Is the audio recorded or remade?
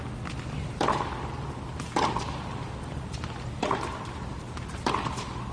recorded